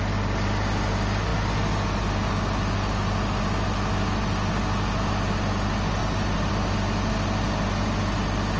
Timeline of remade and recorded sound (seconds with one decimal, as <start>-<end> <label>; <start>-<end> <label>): 0.0-8.6 recorded